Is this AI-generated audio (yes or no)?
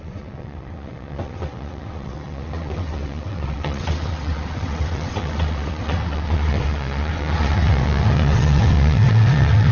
yes